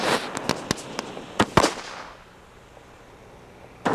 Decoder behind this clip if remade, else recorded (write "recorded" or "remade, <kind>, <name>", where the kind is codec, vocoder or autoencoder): recorded